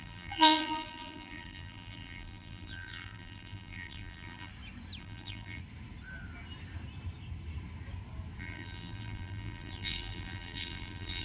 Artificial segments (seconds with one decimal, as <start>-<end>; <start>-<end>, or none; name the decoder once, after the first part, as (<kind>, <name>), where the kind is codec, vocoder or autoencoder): 0.0-4.5 (vocoder, BigVGAN v2); 5.0-5.6; 8.4-11.2